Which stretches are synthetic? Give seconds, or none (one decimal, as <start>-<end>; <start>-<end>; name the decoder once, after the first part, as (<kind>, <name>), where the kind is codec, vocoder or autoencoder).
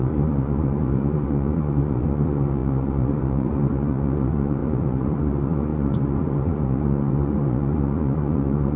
0.0-8.8 (vocoder, Vocos)